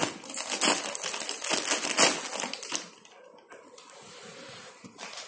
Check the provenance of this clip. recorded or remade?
recorded